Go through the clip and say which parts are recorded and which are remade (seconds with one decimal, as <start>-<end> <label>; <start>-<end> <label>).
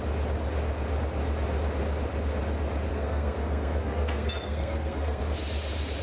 0.0-2.9 recorded; 2.9-5.2 remade; 5.2-6.0 recorded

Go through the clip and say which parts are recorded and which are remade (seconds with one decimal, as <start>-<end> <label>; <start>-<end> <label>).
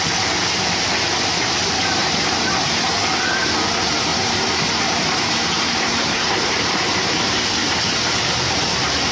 0.0-2.0 recorded; 2.0-2.6 remade; 2.6-4.1 recorded; 4.1-7.8 remade; 7.8-9.1 recorded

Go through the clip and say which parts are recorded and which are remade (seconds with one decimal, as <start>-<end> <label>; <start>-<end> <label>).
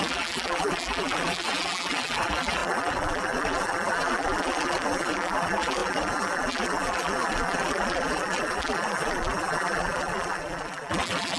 0.0-11.4 remade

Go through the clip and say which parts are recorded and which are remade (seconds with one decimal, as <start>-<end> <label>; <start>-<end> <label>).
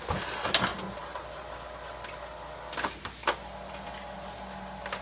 0.0-5.0 recorded